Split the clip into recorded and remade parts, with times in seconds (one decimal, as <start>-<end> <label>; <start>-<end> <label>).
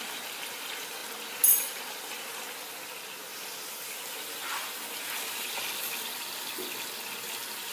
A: 0.0-7.7 recorded